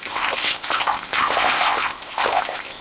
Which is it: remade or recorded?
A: remade